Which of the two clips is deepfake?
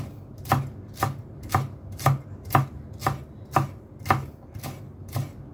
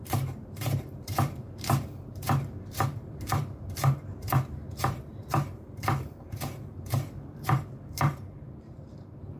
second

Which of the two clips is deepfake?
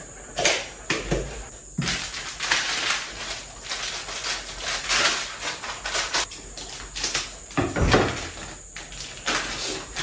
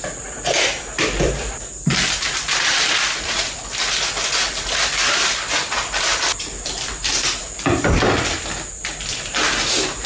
second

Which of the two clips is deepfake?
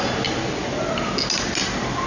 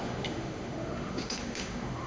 second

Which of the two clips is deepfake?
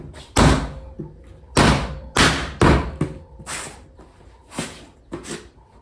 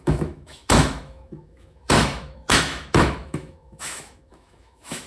second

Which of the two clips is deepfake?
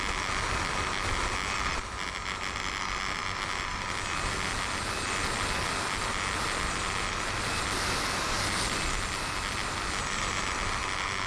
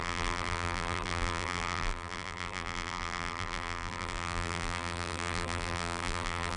second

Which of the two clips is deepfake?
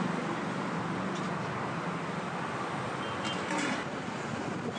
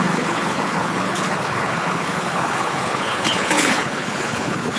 second